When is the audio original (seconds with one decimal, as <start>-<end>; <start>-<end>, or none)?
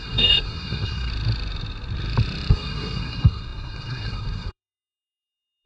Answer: 1.1-2.5